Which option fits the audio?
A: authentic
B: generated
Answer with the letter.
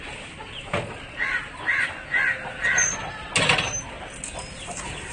A